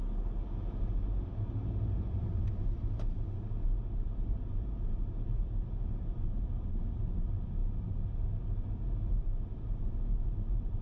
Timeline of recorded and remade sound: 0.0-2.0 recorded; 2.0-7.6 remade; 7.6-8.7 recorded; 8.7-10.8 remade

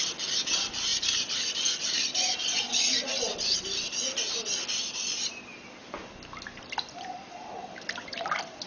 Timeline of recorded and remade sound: 0.0-6.0 remade; 6.0-7.2 recorded; 7.2-8.7 remade

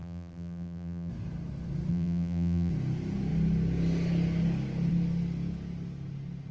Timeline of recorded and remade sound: 0.0-1.1 remade; 1.1-1.9 recorded; 1.9-2.7 remade; 2.7-6.5 recorded

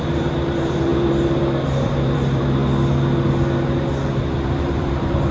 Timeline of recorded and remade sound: 0.0-2.6 remade; 2.6-4.6 recorded; 4.6-5.3 remade